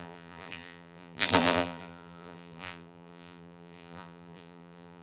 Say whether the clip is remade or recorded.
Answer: remade